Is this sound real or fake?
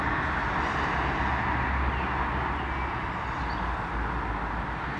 real